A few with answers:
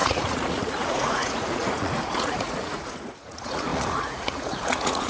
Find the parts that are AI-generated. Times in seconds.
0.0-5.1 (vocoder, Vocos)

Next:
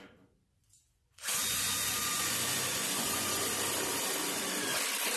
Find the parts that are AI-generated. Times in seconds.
0.6-3.5 (vocoder, Vocos); 4.2-4.8

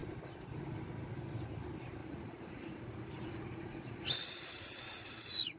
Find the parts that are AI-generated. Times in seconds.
2.0-5.6 (vocoder, Vocos)

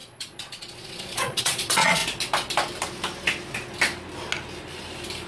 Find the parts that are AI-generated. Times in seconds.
0.0-2.0 (vocoder, Vocos)